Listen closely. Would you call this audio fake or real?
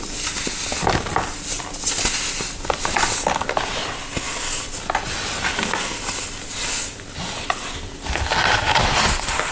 real